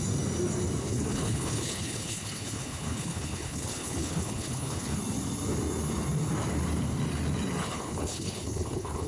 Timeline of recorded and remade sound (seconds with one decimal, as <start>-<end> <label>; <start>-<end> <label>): 0.0-0.8 recorded; 0.8-5.0 remade; 5.0-7.6 recorded; 7.6-9.1 remade

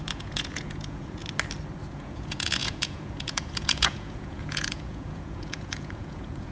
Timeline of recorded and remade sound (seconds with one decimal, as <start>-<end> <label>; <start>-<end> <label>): 0.0-1.2 remade; 1.2-1.9 recorded; 1.9-6.5 remade

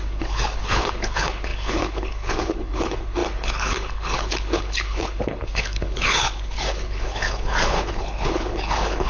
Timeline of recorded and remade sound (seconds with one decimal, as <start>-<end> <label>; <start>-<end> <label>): 0.0-9.1 remade

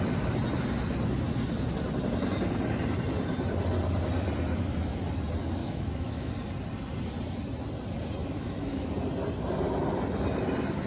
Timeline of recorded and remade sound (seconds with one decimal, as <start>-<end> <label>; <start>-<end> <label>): 0.0-5.6 recorded; 5.6-6.3 remade; 6.3-8.2 recorded; 8.2-8.9 remade; 8.9-10.9 recorded